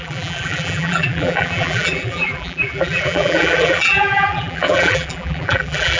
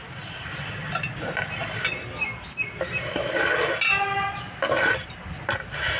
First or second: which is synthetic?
first